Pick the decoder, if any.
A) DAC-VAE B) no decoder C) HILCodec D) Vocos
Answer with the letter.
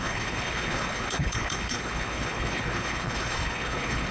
C